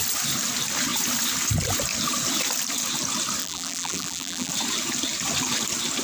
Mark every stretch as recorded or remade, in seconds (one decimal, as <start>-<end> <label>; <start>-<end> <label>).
0.0-3.4 recorded; 3.4-4.5 remade; 4.5-6.0 recorded